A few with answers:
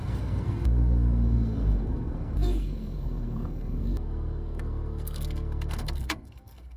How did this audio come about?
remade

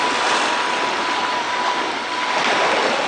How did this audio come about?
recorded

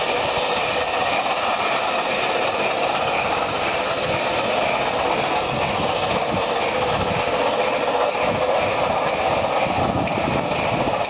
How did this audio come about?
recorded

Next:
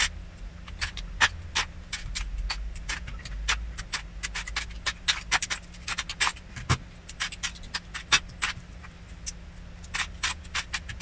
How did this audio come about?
recorded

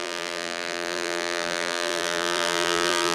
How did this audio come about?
remade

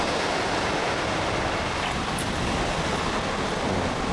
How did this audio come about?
recorded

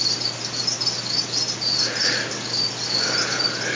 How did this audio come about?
recorded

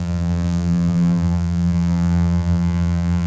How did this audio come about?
remade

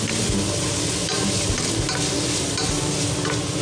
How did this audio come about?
recorded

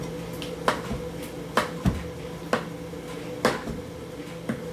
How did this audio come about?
recorded